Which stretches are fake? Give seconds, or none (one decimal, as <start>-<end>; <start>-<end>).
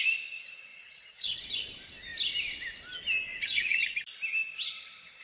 0.7-1.4; 3.3-3.8